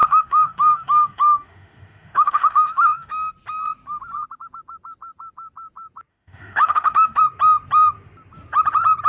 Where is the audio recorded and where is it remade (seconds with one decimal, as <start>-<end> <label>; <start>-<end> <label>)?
0.0-3.3 remade; 3.3-6.1 recorded; 6.1-7.2 remade; 7.2-9.1 recorded